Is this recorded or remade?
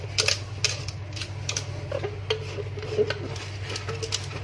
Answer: recorded